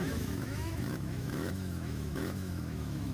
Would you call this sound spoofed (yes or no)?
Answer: yes